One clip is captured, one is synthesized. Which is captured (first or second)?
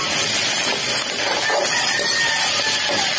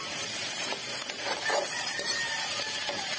first